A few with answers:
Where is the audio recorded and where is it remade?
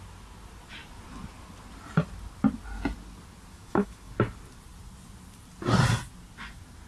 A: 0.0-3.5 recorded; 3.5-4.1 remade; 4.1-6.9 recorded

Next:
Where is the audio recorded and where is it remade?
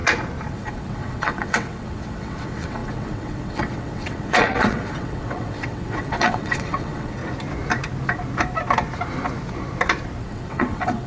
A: 0.0-0.5 recorded; 0.5-7.2 remade; 7.2-10.2 recorded; 10.2-11.1 remade